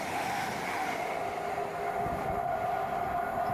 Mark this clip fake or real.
real